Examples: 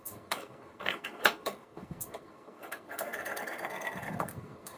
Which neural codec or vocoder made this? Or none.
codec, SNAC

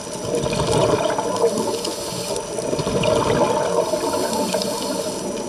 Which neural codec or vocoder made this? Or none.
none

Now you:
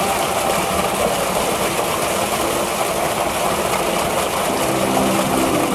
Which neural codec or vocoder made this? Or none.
none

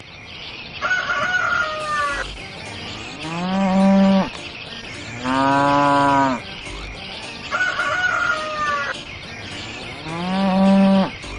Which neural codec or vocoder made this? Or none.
none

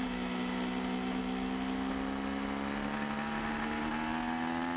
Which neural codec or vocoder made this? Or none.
none